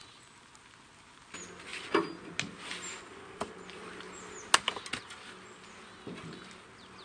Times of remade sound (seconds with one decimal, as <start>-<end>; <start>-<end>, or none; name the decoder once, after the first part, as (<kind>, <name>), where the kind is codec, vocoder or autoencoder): none